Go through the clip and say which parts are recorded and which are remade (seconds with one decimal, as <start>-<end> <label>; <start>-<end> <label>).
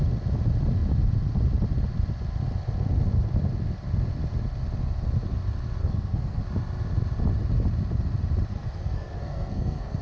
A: 0.0-5.8 recorded; 5.8-6.4 remade; 6.4-8.5 recorded; 8.5-10.0 remade